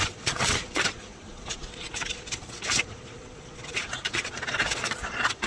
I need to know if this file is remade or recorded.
remade